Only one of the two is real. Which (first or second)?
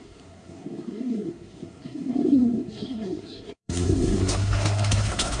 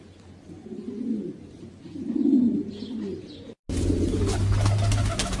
second